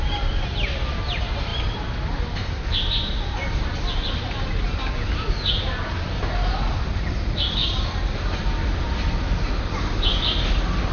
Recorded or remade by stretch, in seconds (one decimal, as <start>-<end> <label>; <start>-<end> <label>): 0.0-10.9 recorded